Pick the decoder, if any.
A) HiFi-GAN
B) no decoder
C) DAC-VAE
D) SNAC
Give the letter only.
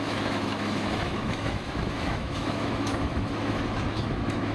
C